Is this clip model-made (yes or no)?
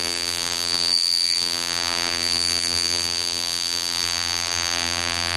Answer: yes